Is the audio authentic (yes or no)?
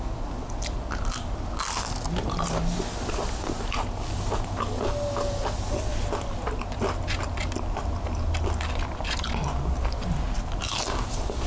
yes